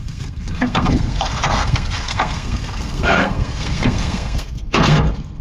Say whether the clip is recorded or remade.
remade